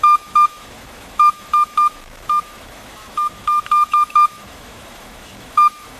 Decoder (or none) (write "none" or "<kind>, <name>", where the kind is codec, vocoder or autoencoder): autoencoder, DAC-VAE